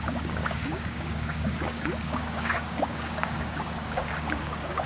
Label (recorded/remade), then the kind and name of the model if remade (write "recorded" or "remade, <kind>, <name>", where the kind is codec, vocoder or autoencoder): remade, codec, DAC